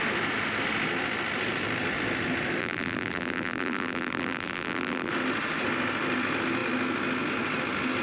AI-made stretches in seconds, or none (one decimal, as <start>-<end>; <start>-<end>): 2.6-5.1